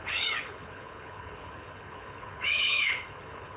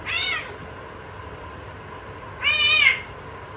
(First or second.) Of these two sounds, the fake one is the first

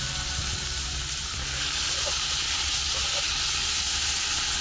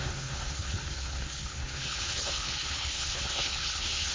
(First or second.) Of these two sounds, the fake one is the second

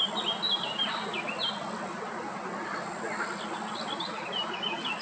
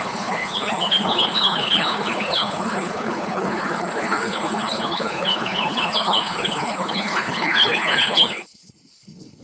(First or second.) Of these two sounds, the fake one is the second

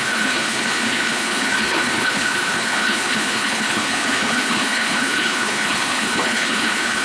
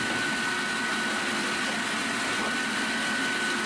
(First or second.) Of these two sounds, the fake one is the first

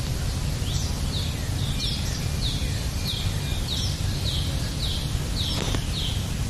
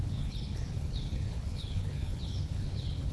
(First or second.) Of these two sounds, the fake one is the second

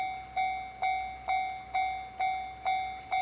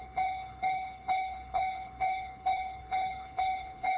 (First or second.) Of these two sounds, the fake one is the second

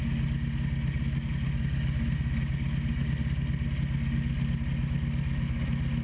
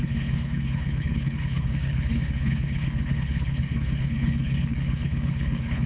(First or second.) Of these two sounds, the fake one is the second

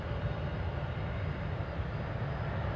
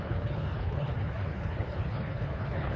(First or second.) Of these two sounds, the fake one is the second